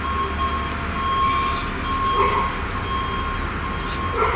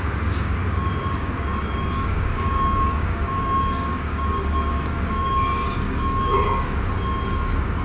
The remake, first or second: second